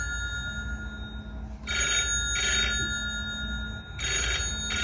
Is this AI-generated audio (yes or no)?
no